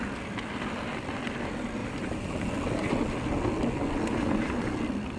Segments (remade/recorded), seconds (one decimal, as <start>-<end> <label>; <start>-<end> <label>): 0.0-1.8 recorded; 1.8-2.5 remade; 2.5-5.2 recorded